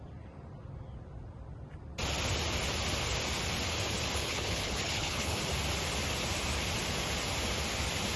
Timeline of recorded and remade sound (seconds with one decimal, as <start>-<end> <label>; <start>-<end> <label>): 0.0-4.2 recorded; 4.2-5.4 remade; 5.4-8.2 recorded